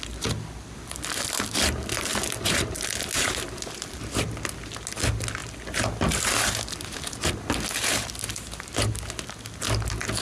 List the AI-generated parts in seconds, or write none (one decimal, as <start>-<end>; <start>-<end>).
none